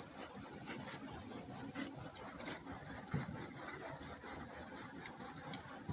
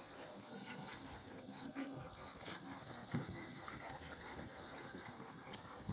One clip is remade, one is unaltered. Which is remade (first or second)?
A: second